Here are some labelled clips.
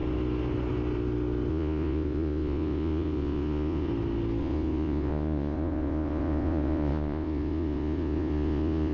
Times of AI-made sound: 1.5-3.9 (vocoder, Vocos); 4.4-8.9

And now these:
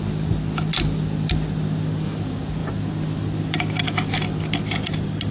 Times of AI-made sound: none

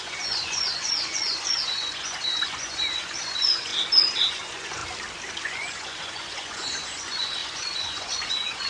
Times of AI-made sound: 0.0-3.7 (vocoder, Vocos); 4.3-4.8; 5.4-8.7

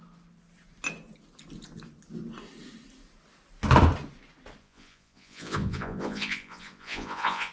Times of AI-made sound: 4.6-7.5 (vocoder, Vocos)

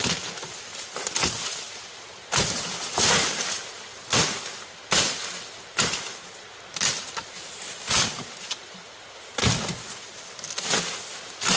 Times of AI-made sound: none

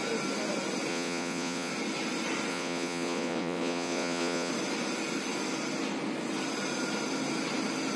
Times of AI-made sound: 0.9-1.7 (vocoder, Vocos); 2.5-4.5

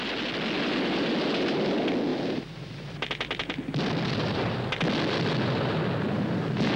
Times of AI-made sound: none